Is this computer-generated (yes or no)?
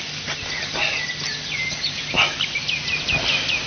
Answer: no